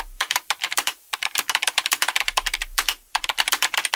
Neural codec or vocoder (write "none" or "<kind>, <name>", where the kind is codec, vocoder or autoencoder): vocoder, BigVGAN v2